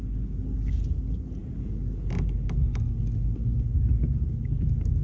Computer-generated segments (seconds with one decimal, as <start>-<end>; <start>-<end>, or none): none